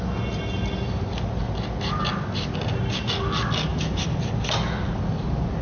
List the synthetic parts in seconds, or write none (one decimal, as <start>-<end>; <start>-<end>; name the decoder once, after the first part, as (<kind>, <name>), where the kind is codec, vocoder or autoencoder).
3.7-5.0 (vocoder, BigVGAN v2)